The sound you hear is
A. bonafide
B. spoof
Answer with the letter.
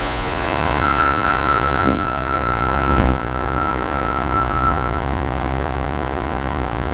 B